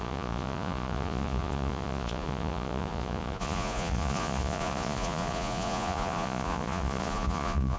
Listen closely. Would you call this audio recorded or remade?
remade